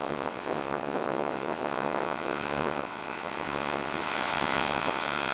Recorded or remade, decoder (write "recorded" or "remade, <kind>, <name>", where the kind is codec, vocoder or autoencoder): remade, vocoder, WaveNeXt